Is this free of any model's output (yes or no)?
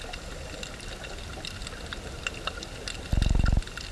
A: yes